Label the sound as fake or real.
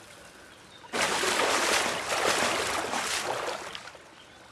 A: real